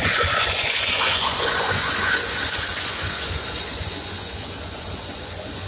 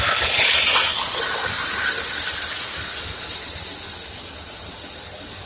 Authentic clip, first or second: second